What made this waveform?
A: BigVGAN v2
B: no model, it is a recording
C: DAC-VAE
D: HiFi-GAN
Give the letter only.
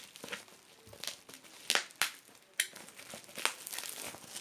B